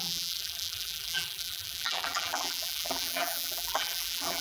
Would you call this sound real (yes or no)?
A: no